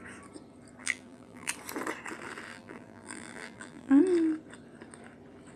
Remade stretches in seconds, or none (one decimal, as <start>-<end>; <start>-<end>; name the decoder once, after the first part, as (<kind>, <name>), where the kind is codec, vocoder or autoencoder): 0.8-1.5 (vocoder, BigVGAN v2); 2.5-4.0